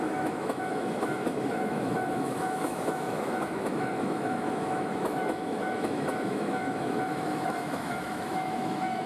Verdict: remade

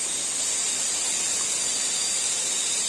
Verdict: recorded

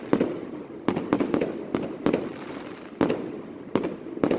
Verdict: recorded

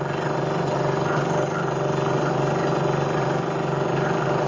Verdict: recorded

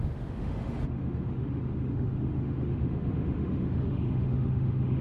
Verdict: remade